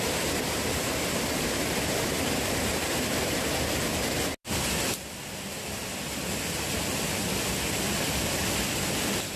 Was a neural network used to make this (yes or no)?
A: no